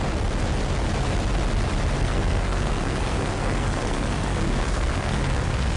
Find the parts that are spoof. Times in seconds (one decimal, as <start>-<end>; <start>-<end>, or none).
2.0-5.8